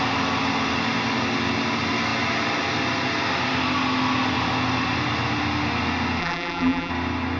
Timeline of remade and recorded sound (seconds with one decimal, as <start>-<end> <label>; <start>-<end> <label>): 0.0-6.2 recorded; 6.2-6.9 remade; 6.9-7.4 recorded